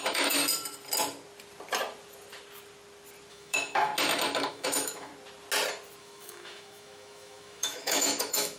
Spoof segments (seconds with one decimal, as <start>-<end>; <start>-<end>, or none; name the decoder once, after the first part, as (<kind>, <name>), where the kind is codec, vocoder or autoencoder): 0.0-0.4 (autoencoder, DAC-VAE); 3.3-3.9; 4.5-5.1; 6.0-8.6